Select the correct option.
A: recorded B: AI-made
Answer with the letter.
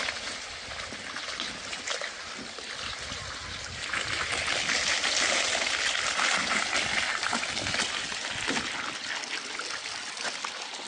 A